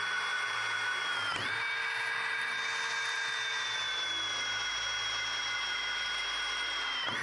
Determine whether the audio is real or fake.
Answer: real